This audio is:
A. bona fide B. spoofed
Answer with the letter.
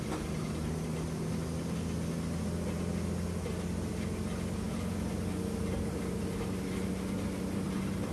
A